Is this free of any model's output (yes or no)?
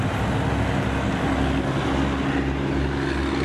yes